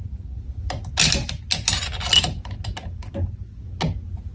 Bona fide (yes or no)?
yes